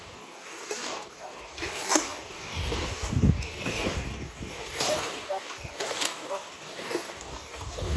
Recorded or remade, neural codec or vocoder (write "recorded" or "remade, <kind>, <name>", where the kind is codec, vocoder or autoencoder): remade, codec, DAC